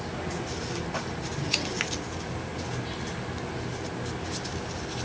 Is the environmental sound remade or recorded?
recorded